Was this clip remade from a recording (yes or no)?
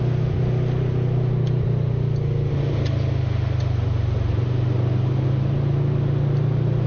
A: no